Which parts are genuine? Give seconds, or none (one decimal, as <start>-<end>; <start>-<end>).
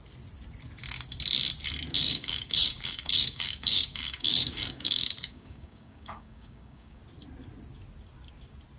0.0-2.0; 7.0-8.8